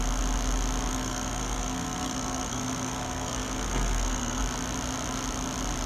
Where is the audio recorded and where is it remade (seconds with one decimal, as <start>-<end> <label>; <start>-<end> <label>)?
0.0-0.9 recorded; 0.9-4.4 remade; 4.4-5.9 recorded